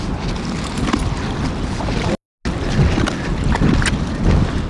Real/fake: real